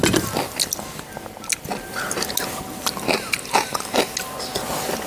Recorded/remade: recorded